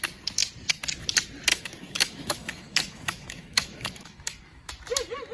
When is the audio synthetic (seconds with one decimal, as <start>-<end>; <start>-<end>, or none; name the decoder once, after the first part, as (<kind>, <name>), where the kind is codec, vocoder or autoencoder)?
1.5-4.7 (autoencoder, DAC-VAE)

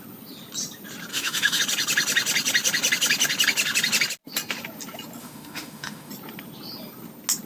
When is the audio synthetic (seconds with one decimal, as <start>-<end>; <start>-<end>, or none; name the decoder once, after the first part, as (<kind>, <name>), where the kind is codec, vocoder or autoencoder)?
1.1-1.6 (autoencoder, DAC-VAE); 5.2-6.1

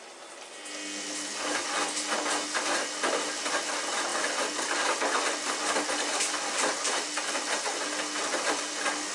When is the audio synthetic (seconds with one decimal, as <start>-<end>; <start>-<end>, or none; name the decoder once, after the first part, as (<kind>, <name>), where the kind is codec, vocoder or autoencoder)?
none